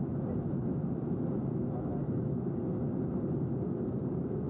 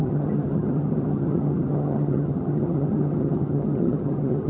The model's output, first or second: second